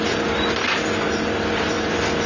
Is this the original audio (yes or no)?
yes